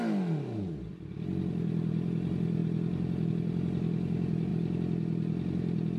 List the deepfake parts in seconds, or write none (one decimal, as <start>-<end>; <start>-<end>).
none